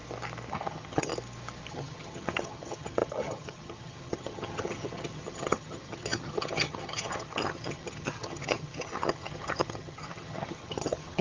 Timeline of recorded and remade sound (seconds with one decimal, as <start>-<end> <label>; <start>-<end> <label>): 0.0-0.5 recorded; 0.5-1.1 remade; 1.1-1.7 recorded; 1.7-11.2 remade